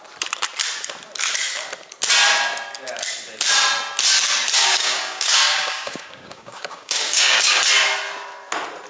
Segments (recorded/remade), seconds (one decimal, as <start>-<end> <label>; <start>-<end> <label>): 0.0-4.6 recorded; 4.6-7.6 remade; 7.6-8.9 recorded